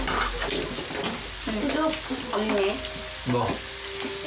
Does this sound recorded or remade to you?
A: recorded